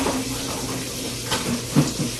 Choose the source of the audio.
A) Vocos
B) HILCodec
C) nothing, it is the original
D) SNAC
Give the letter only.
C